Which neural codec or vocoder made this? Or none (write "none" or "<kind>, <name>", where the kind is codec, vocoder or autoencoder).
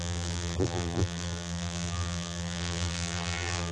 vocoder, BigVGAN v2